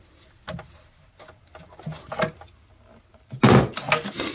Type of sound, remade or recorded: recorded